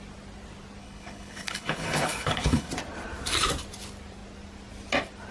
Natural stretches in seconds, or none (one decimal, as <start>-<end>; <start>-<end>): 0.0-0.8; 2.7-5.3